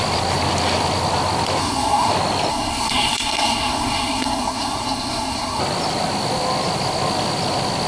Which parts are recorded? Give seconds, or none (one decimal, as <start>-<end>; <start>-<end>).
0.0-1.6; 2.1-2.5; 5.6-7.9